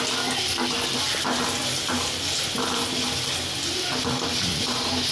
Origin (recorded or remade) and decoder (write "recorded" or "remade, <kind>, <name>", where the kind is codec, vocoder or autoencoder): recorded